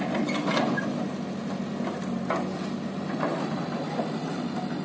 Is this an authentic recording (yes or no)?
yes